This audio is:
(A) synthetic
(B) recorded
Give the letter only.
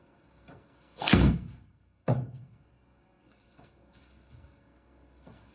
A